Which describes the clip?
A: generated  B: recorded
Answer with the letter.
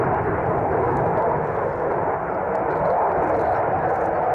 B